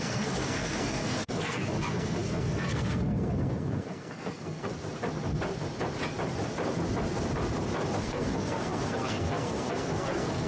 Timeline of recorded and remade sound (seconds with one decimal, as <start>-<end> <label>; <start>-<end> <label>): 0.0-4.7 remade; 4.7-8.0 recorded; 8.0-10.5 remade